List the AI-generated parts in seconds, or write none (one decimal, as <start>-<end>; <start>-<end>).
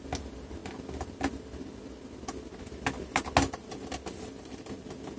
none